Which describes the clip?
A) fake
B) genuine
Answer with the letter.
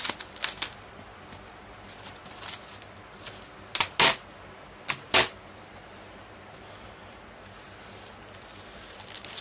B